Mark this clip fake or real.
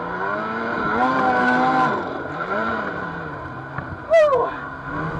fake